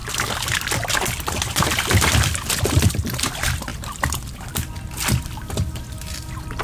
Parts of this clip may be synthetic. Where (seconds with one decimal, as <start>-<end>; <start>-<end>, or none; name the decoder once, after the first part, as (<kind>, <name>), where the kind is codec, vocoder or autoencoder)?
none